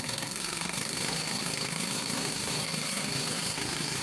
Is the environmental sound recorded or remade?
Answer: remade